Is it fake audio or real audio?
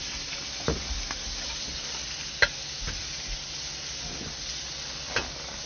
real